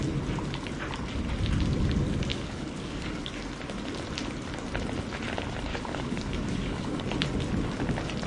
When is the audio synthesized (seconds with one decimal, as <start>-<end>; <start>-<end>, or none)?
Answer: 2.3-3.3; 5.7-7.0